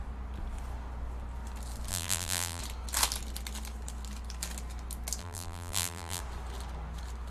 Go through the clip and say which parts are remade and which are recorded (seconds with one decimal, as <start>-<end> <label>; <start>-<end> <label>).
0.0-1.9 recorded; 1.9-2.6 remade; 2.6-5.2 recorded; 5.2-6.2 remade; 6.2-7.3 recorded